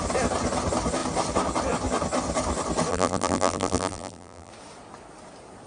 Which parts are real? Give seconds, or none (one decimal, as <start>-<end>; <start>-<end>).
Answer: 0.0-2.9; 4.5-5.7